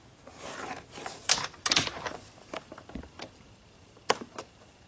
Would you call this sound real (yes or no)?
no